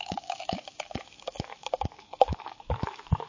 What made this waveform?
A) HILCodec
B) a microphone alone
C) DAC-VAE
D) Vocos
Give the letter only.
C